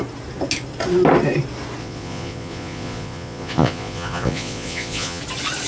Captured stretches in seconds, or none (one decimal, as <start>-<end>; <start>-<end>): 0.0-1.8; 5.2-5.7